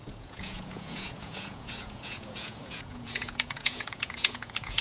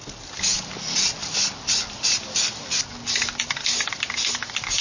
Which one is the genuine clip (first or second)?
second